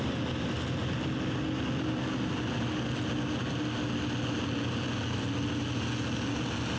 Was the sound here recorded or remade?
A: recorded